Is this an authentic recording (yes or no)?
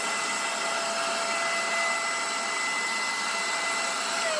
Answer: yes